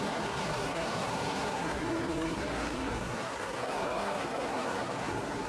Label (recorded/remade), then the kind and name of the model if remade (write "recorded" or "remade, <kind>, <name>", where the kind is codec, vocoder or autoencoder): remade, codec, SNAC